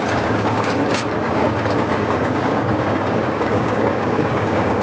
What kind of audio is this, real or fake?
fake